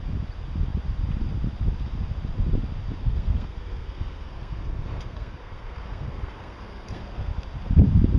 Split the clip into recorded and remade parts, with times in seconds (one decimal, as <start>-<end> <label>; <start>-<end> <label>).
0.0-3.0 recorded; 3.0-7.3 remade; 7.3-8.2 recorded